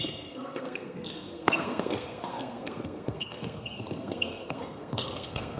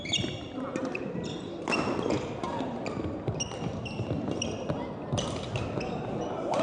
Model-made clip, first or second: first